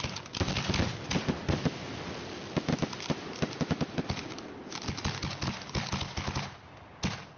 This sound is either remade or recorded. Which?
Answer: recorded